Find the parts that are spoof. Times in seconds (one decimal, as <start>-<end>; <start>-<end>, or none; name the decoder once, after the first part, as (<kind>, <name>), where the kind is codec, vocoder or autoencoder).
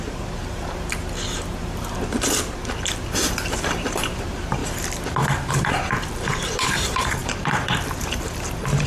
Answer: 0.0-4.6 (vocoder, BigVGAN v2); 5.5-8.9